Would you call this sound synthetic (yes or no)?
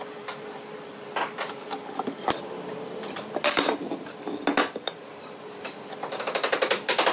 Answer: yes